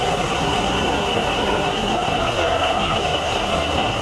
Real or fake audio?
fake